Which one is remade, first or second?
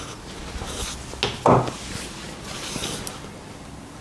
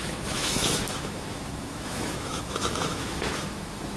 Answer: second